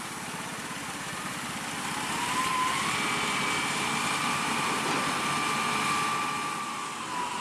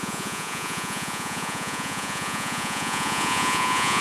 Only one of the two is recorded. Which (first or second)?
first